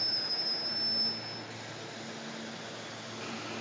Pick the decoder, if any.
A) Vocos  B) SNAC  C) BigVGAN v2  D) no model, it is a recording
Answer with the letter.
D